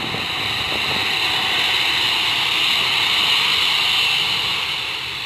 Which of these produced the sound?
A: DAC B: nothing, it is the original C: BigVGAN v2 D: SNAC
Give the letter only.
B